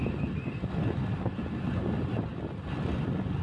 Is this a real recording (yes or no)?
yes